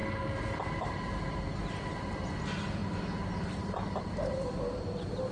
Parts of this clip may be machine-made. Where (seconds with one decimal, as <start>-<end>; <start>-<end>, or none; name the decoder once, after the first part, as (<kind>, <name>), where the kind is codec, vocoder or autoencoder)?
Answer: 1.1-2.8 (vocoder, BigVGAN v2); 4.0-5.3